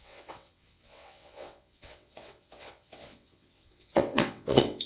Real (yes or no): no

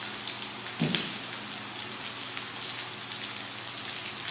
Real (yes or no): yes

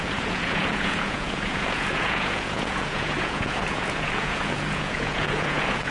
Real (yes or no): no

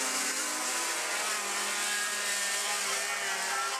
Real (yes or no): yes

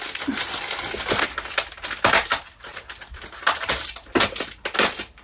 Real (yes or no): yes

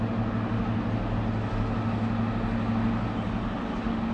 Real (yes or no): yes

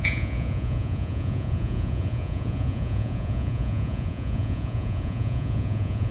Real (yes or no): no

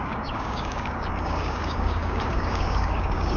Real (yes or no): no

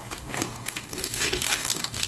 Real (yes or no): no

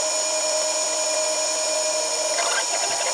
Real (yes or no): yes